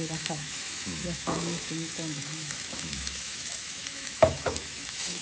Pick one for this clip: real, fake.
fake